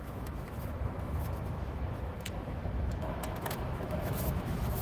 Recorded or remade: remade